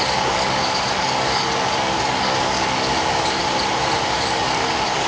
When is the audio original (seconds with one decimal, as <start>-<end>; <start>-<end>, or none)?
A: 3.4-4.1